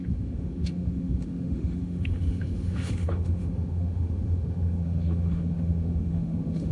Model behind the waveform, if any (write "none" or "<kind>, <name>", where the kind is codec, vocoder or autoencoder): autoencoder, DAC-VAE